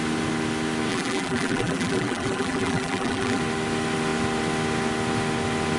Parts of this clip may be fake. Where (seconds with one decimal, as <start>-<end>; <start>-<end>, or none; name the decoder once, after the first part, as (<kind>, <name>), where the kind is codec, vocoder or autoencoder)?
0.9-3.4 (vocoder, BigVGAN v2)